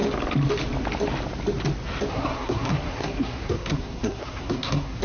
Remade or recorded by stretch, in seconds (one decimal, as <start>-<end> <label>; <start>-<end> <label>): 0.0-2.1 recorded; 2.1-5.0 remade